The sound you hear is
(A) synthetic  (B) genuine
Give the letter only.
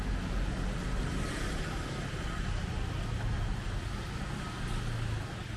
B